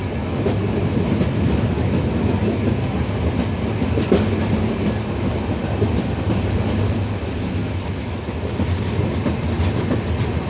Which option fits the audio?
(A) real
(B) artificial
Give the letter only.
A